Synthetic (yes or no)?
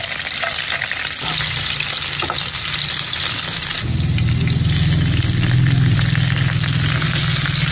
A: no